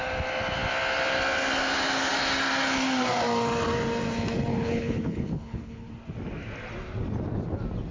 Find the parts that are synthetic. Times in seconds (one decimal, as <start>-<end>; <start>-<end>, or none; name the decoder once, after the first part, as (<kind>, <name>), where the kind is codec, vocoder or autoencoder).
4.5-5.9 (codec, HILCodec)